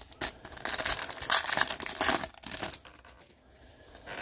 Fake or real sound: real